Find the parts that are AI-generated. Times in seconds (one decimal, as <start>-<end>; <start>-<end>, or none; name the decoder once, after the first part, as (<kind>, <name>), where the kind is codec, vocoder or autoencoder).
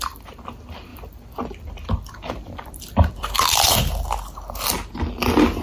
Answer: 0.9-3.7 (vocoder, BigVGAN v2)